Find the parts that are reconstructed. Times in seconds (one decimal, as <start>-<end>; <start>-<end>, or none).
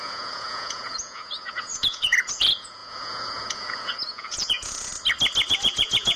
0.0-4.9; 5.5-6.2